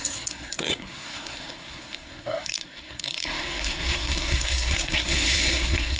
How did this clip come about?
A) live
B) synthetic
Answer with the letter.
B